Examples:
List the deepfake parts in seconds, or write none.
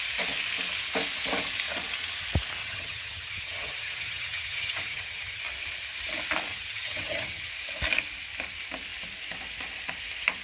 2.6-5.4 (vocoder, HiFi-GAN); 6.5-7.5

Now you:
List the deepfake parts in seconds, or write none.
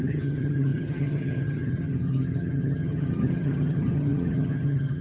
0.0-5.0 (vocoder, HiFi-GAN)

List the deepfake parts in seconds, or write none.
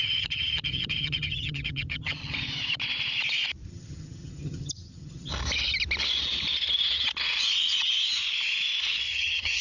0.0-2.2 (vocoder, HiFi-GAN); 3.7-5.3; 9.0-9.6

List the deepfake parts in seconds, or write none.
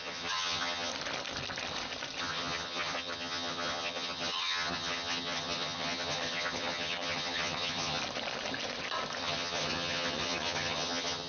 0.0-0.9 (vocoder, HiFi-GAN); 2.2-8.0; 9.2-11.3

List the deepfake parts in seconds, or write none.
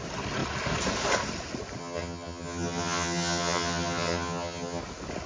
1.8-4.8 (vocoder, HiFi-GAN)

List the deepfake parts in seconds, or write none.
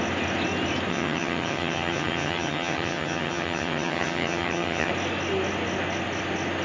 0.9-4.9 (vocoder, HiFi-GAN)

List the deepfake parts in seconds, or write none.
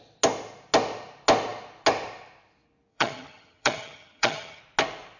2.9-4.6 (vocoder, HiFi-GAN)